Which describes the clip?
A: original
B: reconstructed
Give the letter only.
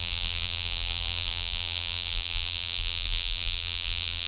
B